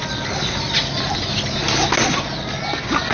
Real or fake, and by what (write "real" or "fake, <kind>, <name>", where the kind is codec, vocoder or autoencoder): real